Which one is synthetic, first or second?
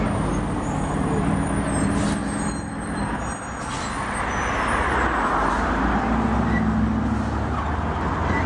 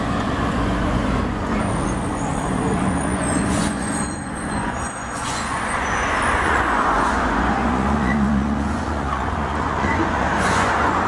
second